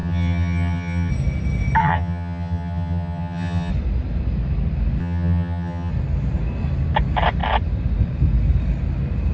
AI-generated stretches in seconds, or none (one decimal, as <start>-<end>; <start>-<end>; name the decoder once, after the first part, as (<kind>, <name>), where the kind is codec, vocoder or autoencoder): 0.0-1.1 (vocoder, HiFi-GAN); 1.8-3.7; 5.0-5.9